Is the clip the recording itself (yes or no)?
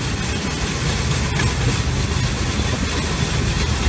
yes